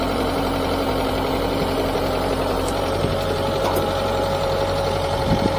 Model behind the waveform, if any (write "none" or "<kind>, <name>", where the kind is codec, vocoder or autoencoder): vocoder, BigVGAN v2